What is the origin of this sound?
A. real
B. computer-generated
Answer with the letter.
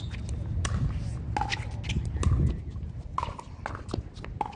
A